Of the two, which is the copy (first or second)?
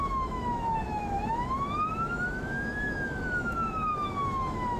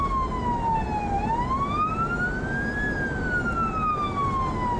first